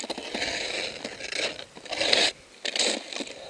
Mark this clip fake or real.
real